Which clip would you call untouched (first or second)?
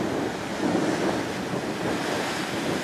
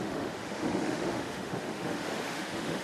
first